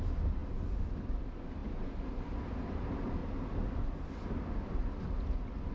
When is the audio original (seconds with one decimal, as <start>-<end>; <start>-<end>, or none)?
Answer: 0.0-5.7